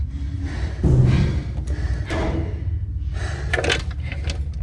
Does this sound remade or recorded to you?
recorded